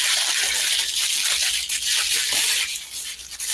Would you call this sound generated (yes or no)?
no